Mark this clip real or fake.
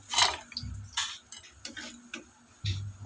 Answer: real